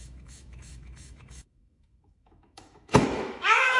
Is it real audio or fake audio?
fake